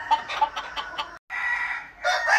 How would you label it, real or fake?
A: real